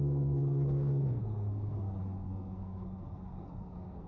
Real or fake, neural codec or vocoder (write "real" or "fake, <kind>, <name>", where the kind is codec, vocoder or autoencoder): fake, codec, SNAC